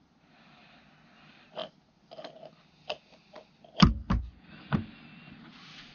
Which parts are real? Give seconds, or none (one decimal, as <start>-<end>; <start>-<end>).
0.0-5.9